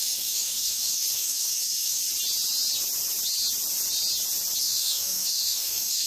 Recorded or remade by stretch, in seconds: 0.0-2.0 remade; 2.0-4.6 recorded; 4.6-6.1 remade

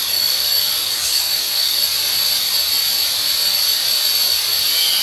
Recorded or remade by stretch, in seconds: 0.0-1.8 remade; 1.8-5.0 recorded

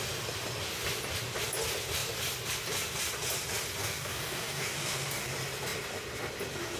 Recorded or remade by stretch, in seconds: 0.0-3.8 recorded; 3.8-5.3 remade; 5.3-6.8 recorded

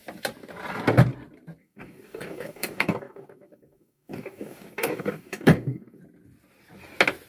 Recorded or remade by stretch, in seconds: 0.0-1.6 recorded; 1.6-6.0 remade; 6.0-7.3 recorded

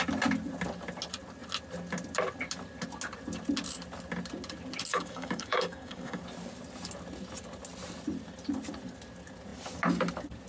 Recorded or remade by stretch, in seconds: 0.0-4.9 recorded; 4.9-6.2 remade; 6.2-10.5 recorded

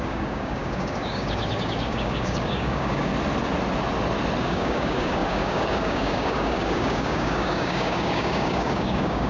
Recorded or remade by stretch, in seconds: 0.0-3.1 remade; 3.1-4.4 recorded; 4.4-9.3 remade